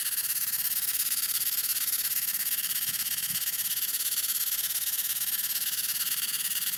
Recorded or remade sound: remade